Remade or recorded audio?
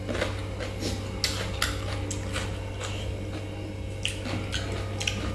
recorded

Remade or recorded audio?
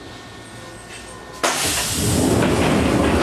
recorded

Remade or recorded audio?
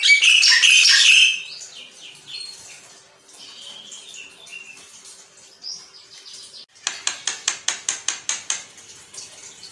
recorded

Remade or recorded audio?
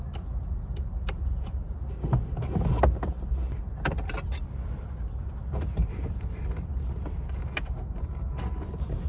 recorded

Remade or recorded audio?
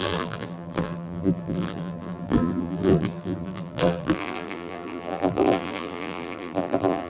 remade